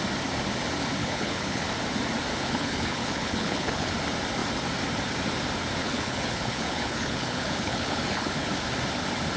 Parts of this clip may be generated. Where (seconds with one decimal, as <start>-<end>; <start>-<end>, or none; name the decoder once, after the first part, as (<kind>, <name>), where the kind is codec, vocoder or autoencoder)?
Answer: 1.0-1.6 (codec, HILCodec); 2.3-3.9; 5.8-8.5